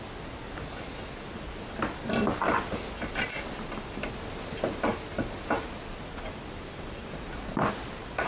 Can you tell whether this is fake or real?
real